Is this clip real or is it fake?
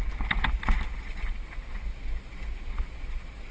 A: real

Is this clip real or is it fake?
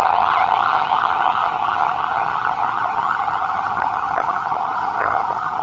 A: fake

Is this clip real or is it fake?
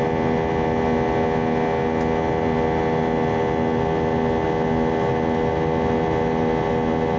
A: real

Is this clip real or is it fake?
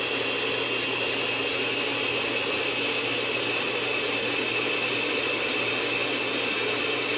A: real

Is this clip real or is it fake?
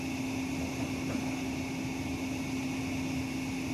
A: real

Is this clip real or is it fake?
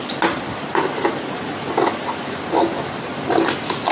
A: real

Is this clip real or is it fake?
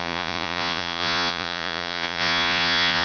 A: fake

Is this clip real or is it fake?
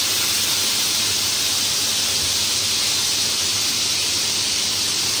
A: real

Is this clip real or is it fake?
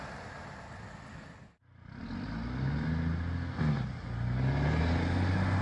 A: real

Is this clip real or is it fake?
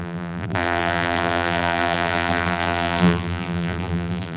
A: fake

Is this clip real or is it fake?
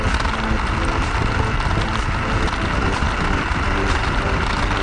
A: real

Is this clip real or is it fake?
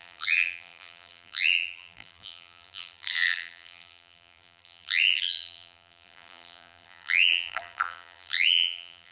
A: fake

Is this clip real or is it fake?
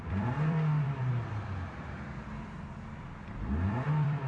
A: fake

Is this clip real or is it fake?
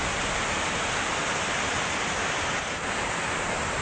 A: real